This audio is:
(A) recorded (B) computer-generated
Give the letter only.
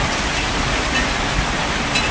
A